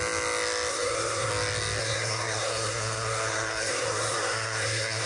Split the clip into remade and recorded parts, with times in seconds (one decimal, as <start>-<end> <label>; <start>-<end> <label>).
0.0-0.7 recorded; 0.7-1.3 remade; 1.3-1.8 recorded; 1.8-5.1 remade